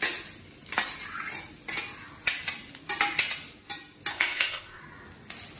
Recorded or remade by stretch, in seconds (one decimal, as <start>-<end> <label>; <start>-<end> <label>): 0.0-4.1 recorded; 4.1-4.8 remade; 4.8-5.6 recorded